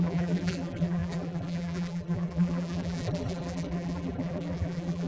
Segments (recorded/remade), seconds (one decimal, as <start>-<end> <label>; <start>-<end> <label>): 0.0-5.1 remade